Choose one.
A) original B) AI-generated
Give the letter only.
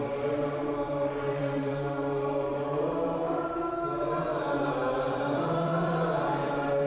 B